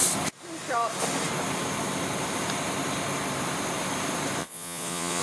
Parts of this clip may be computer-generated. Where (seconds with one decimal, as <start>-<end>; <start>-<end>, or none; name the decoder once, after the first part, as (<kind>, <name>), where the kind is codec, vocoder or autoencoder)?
4.4-5.2 (vocoder, Vocos)